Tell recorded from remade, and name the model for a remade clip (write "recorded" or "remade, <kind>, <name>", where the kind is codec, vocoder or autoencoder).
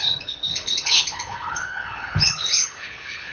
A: remade, codec, HILCodec